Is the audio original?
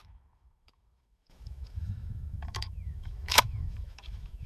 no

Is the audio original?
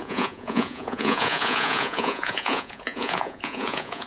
no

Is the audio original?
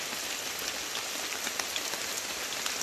yes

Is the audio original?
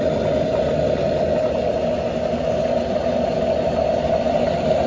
yes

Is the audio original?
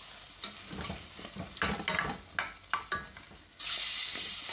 yes